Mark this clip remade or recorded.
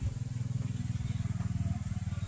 recorded